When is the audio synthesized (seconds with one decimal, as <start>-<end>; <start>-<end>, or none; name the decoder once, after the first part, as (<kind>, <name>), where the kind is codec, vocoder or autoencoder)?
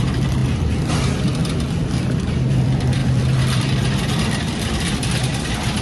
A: 0.0-1.4 (vocoder, BigVGAN v2); 2.3-5.8